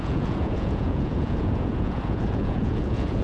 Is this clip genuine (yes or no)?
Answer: no